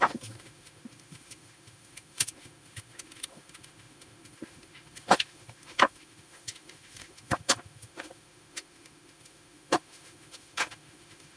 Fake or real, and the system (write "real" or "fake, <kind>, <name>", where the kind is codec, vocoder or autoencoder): fake, autoencoder, DAC-VAE